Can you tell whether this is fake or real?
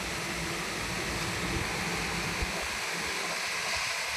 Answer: real